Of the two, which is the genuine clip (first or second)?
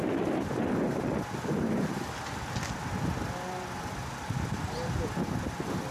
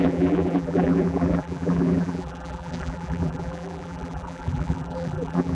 first